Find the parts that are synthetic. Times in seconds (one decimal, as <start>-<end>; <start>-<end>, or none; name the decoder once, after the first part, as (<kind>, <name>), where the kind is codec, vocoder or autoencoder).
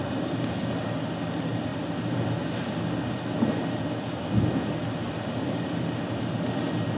none